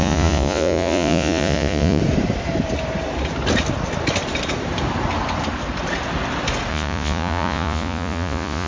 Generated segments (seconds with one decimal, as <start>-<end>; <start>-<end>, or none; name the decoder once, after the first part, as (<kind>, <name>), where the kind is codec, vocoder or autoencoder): 0.0-2.0 (vocoder, Vocos); 6.7-8.7